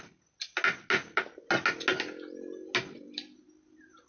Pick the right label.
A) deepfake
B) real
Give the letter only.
B